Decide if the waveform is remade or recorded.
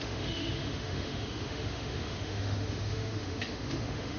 remade